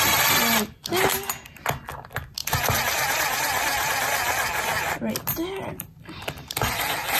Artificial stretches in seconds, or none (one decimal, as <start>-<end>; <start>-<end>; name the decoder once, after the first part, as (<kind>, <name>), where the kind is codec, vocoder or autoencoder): 2.4-5.1 (vocoder, BigVGAN v2); 5.7-6.7